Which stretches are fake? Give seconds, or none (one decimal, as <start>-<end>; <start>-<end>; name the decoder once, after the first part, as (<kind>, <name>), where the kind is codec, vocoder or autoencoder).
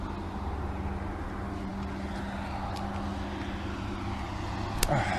none